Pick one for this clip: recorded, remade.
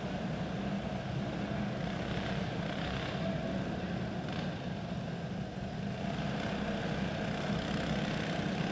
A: recorded